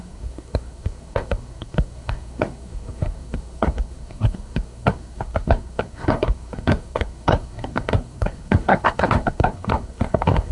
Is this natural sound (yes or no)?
no